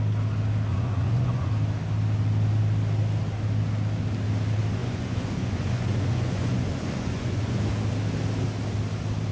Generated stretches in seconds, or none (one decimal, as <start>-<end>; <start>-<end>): 0.7-1.5; 4.8-7.6